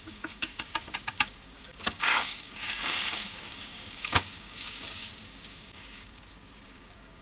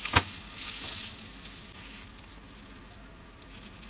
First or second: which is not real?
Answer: first